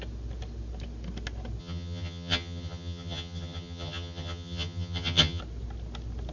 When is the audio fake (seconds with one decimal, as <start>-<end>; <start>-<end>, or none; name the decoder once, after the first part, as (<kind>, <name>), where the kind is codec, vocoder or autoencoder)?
1.6-5.4 (vocoder, HiFi-GAN)